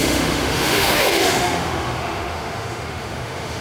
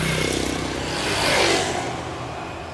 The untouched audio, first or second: second